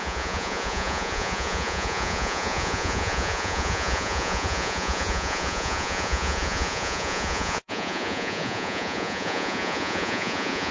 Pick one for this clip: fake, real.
fake